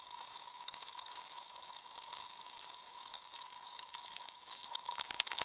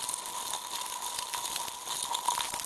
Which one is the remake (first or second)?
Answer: first